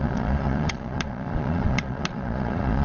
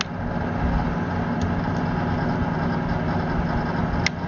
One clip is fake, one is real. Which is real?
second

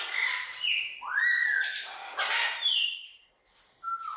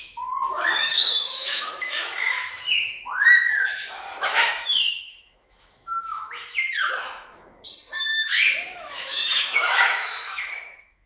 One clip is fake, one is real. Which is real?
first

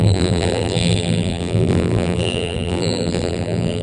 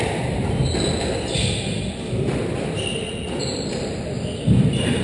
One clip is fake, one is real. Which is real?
second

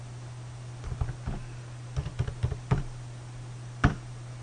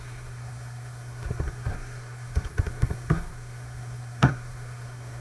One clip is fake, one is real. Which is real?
first